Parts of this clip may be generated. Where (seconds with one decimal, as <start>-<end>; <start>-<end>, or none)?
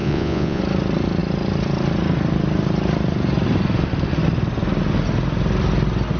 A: 0.0-0.6